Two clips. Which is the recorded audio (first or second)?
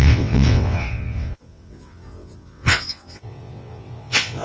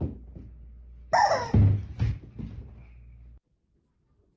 second